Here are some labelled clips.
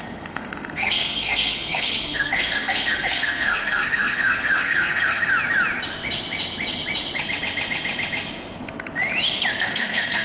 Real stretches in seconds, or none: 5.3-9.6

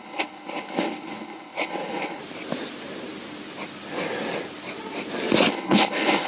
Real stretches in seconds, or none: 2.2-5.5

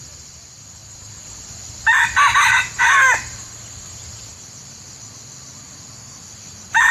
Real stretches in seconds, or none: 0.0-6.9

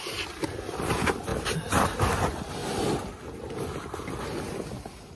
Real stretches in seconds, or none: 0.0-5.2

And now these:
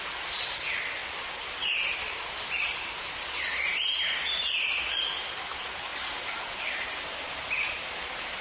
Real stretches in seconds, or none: 1.0-1.5

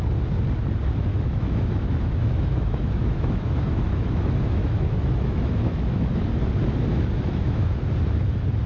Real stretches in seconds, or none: 0.0-1.1; 6.3-6.9; 7.8-8.7

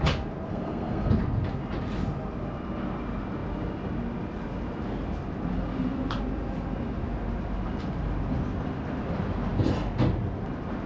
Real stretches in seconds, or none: 0.0-0.5; 1.1-10.9

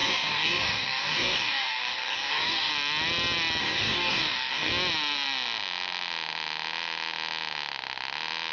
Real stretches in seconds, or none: 2.7-3.6; 4.7-8.5